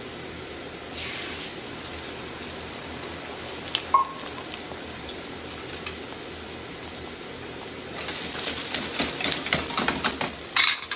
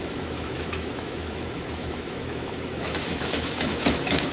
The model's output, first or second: second